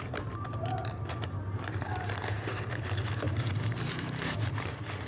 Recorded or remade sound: remade